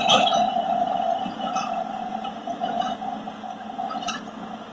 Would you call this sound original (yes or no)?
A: yes